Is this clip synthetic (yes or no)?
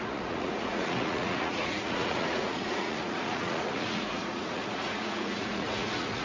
yes